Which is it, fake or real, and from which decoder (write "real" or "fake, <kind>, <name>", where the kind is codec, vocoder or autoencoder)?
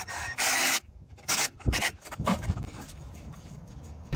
fake, codec, DAC